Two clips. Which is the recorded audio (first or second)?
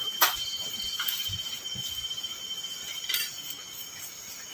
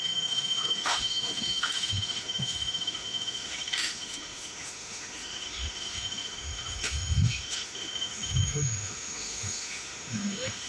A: first